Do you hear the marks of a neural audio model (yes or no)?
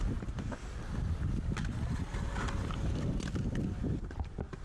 yes